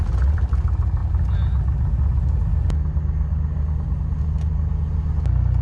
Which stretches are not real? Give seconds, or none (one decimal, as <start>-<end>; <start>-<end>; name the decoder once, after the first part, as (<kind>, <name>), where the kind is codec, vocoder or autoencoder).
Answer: none